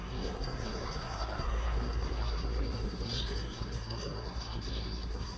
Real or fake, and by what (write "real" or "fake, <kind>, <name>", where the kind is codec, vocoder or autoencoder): fake, codec, SNAC